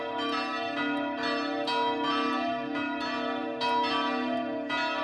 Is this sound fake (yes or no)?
no